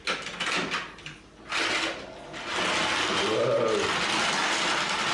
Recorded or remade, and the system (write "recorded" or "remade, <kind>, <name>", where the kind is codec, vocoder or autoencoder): recorded